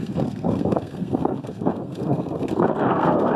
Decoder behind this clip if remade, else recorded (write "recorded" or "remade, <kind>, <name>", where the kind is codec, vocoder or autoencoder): remade, codec, SNAC